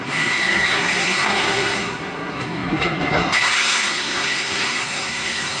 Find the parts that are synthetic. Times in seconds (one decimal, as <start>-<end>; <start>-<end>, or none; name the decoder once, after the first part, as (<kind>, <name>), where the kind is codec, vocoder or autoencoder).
0.0-5.6 (codec, SNAC)